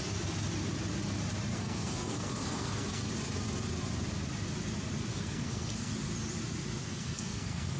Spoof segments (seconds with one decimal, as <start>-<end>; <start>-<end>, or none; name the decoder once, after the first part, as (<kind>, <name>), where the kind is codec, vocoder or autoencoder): 1.5-3.1 (codec, SNAC); 5.1-5.9; 6.8-7.8